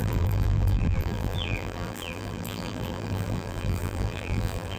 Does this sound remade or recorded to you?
remade